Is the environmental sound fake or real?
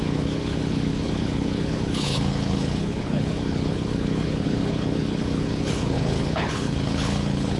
fake